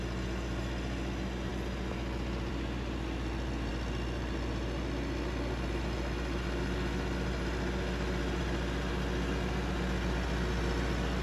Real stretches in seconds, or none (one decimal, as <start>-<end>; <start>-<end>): 0.0-11.2